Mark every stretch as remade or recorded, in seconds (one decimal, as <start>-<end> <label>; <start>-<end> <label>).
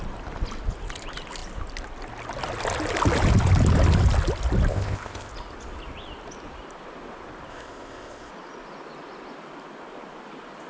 0.0-4.7 recorded; 4.7-5.3 remade; 5.3-7.5 recorded; 7.5-8.3 remade; 8.3-10.7 recorded